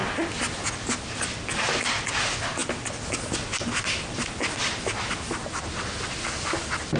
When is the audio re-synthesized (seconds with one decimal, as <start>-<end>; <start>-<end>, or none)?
none